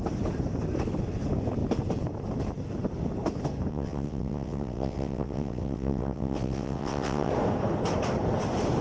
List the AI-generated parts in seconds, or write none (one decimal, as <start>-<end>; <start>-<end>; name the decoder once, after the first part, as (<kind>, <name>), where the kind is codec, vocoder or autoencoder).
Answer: 3.7-7.3 (vocoder, WaveNeXt)